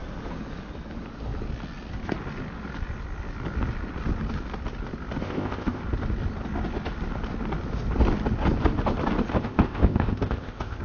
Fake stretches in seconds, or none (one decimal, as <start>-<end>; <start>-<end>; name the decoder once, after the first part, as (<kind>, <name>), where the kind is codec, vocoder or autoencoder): 5.2-5.8 (codec, ZipCodec); 9.3-10.8